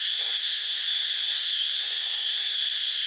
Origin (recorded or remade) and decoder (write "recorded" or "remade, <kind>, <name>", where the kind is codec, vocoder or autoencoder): remade, codec, SNAC